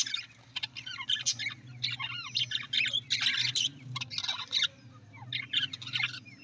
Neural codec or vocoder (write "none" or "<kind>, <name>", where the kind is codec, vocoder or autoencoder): none